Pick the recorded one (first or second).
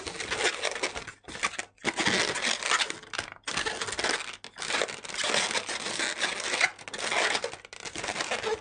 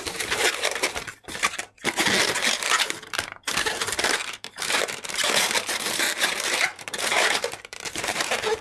first